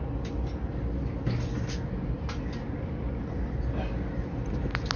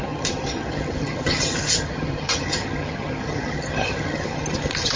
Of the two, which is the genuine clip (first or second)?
first